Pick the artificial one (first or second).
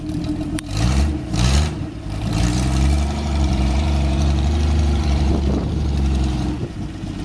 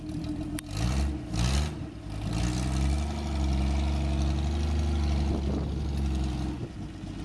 first